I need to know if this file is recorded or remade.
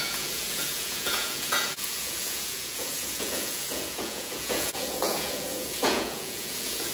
remade